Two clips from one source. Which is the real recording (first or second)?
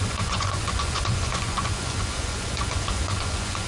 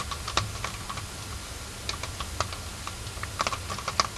second